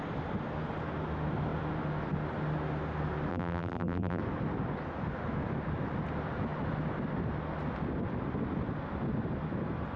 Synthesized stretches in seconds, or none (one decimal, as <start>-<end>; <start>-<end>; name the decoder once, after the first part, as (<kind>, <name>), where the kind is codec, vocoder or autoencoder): 3.3-4.2 (vocoder, BigVGAN v2)